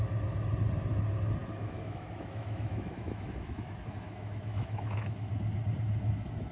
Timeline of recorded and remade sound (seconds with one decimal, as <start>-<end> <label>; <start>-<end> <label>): 0.0-1.4 recorded; 1.4-5.3 remade; 5.3-6.5 recorded